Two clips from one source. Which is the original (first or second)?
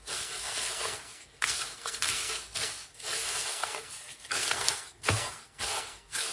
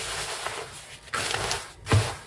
second